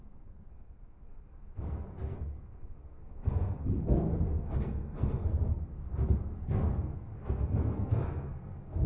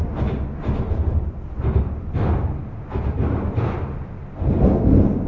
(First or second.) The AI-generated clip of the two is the first